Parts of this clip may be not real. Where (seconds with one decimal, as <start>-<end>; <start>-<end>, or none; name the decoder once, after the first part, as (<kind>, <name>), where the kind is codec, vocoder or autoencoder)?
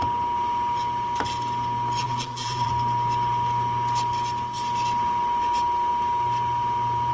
2.0-2.7 (vocoder, BigVGAN v2)